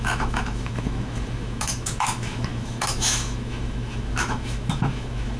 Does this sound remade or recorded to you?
remade